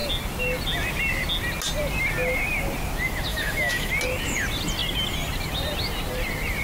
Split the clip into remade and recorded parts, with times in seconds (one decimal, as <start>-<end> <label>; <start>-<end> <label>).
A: 0.0-3.3 recorded; 3.3-3.9 remade; 3.9-6.6 recorded